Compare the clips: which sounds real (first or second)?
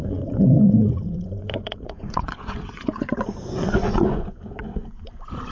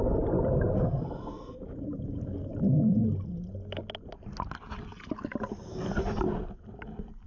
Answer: second